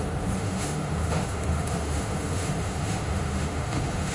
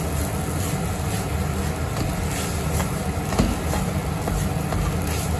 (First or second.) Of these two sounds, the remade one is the first